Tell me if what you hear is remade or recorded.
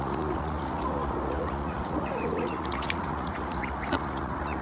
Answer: remade